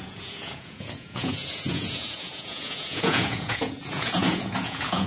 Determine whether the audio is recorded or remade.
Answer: remade